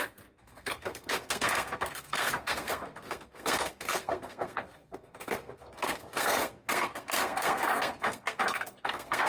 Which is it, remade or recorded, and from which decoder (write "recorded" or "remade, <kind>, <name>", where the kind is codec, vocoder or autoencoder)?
remade, codec, SNAC